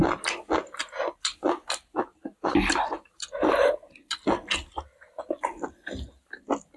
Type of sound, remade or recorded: recorded